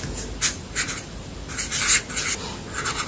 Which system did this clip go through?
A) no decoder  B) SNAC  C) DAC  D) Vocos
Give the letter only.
A